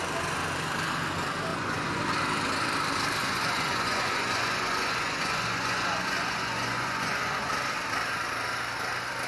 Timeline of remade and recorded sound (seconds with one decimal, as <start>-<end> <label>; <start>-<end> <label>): 0.0-1.5 recorded; 1.5-2.0 remade; 2.0-3.2 recorded; 3.2-7.5 remade; 7.5-9.3 recorded